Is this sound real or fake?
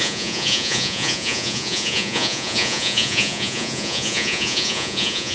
fake